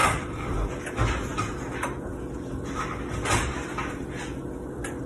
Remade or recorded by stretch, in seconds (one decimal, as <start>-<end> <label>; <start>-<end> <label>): 0.0-5.1 recorded